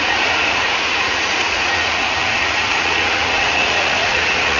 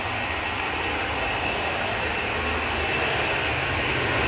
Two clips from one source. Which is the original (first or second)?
second